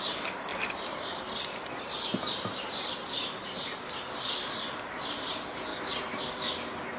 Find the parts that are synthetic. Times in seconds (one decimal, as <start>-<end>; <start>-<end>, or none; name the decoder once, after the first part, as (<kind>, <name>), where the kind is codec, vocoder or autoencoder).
none